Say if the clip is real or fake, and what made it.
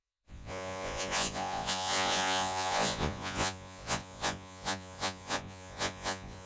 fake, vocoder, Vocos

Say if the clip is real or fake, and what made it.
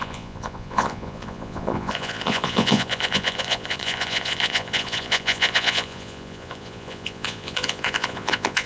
fake, vocoder, Vocos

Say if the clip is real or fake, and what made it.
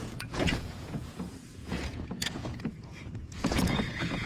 fake, vocoder, Vocos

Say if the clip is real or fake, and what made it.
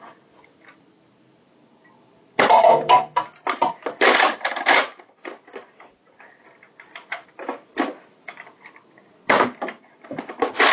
real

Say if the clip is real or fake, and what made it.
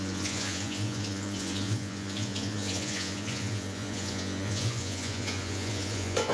fake, vocoder, Vocos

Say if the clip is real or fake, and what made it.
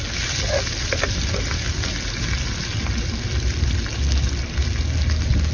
real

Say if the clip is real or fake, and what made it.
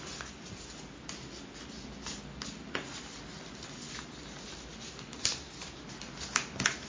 real